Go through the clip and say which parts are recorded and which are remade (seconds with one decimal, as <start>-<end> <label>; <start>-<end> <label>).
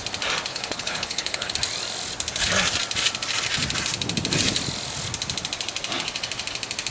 0.0-0.5 recorded; 0.5-1.5 remade; 1.5-6.9 recorded